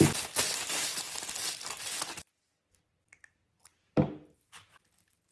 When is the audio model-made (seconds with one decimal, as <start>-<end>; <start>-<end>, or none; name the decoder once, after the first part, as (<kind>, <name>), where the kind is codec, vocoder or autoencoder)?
none